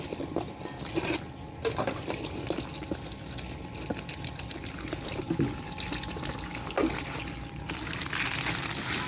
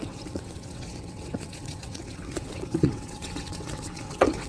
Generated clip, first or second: second